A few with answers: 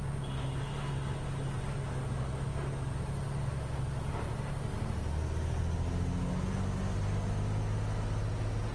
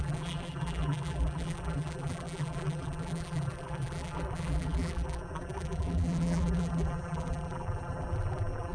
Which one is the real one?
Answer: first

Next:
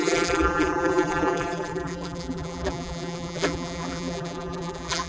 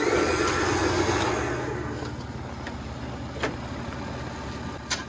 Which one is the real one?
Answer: second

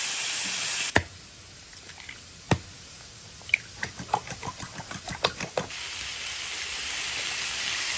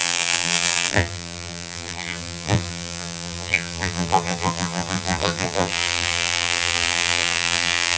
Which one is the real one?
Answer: first